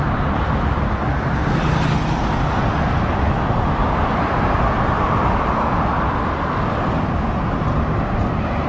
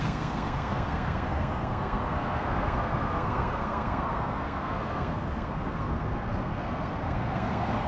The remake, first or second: second